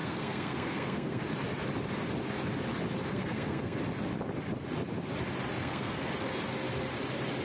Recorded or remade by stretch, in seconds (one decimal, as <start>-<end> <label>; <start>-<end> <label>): 0.0-1.2 remade; 1.2-3.1 recorded; 3.1-3.8 remade; 3.8-5.6 recorded; 5.6-6.1 remade; 6.1-7.4 recorded